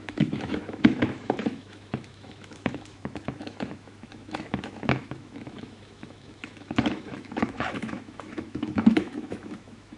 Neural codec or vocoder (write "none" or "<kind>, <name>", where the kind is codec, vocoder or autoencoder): autoencoder, DAC-VAE